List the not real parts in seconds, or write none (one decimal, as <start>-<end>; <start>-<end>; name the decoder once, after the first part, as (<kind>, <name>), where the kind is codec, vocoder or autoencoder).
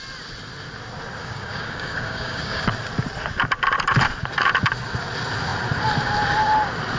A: 1.2-2.6 (codec, DAC)